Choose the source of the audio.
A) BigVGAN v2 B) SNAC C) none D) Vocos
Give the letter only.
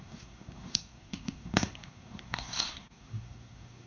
B